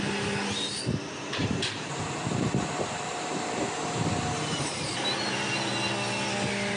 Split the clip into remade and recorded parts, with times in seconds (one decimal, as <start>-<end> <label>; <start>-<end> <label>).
0.0-1.4 recorded; 1.4-5.5 remade; 5.5-6.8 recorded